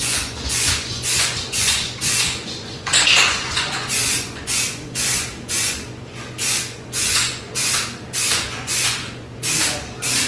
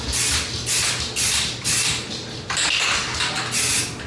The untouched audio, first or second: second